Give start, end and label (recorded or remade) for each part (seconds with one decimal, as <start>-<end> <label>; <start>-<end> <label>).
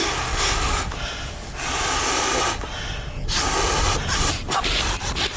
0.0-0.7 remade; 0.7-5.4 recorded